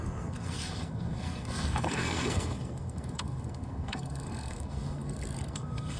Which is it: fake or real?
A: fake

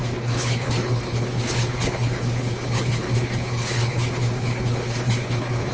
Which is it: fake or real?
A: fake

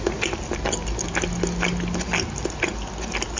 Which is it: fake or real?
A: real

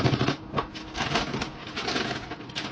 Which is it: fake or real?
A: real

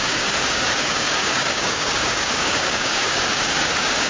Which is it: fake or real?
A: fake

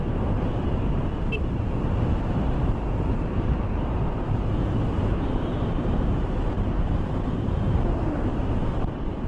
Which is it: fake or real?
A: fake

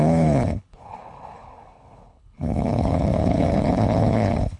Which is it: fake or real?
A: fake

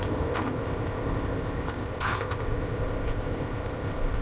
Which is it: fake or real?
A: fake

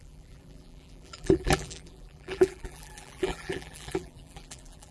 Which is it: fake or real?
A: fake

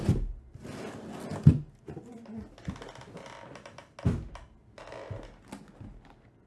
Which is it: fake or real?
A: real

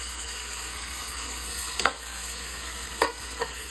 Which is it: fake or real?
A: fake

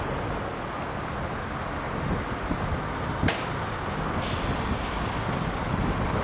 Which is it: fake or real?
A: real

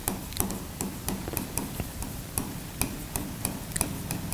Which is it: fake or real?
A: real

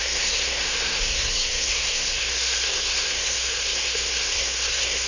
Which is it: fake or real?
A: fake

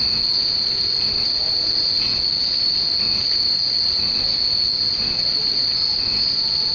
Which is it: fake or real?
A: real